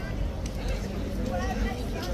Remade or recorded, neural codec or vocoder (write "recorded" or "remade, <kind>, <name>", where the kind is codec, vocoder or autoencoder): recorded